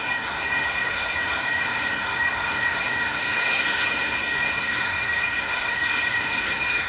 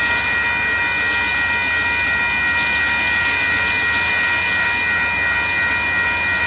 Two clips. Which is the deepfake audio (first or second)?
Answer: first